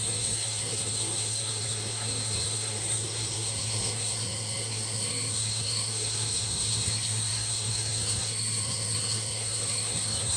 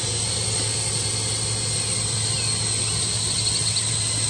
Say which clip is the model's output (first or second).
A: first